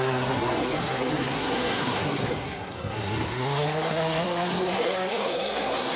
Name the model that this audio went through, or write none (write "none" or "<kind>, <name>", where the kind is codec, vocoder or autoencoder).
codec, SNAC